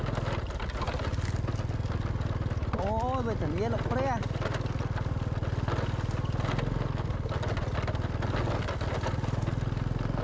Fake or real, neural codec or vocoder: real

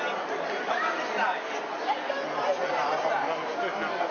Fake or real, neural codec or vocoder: real